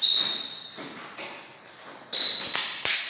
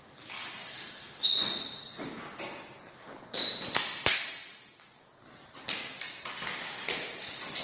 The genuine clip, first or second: second